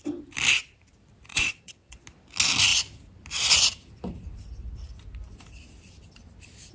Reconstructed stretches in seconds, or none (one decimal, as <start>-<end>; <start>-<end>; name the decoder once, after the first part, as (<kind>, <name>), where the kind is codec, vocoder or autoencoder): 1.3-2.0 (vocoder, WaveNeXt)